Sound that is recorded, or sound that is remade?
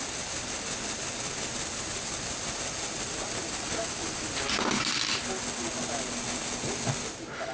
recorded